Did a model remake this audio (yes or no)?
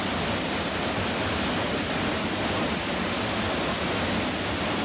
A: no